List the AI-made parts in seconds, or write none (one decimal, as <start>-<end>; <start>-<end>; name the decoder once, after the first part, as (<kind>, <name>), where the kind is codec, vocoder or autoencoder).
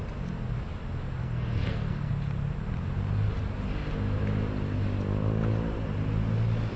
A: 1.2-2.1 (codec, SNAC)